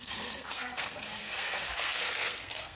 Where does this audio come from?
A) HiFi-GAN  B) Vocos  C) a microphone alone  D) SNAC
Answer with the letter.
D